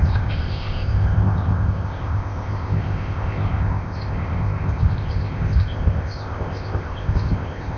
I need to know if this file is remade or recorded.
remade